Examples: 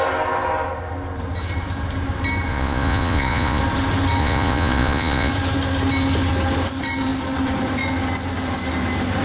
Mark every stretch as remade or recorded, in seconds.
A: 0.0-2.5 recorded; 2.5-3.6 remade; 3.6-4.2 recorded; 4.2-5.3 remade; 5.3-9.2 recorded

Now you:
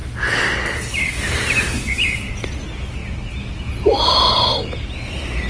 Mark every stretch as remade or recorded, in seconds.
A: 0.0-5.5 recorded

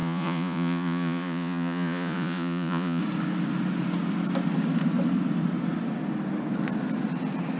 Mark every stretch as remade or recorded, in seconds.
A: 0.0-3.0 remade; 3.0-7.6 recorded

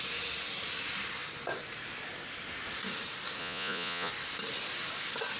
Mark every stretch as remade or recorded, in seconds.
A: 0.0-3.4 recorded; 3.4-4.1 remade; 4.1-5.4 recorded

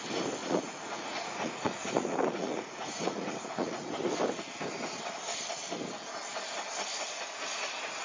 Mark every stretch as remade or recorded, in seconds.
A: 0.0-0.4 recorded; 0.4-3.9 remade; 3.9-8.0 recorded